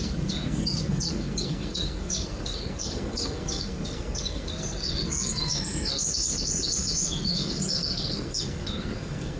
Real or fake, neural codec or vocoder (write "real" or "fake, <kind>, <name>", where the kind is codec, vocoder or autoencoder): fake, codec, SNAC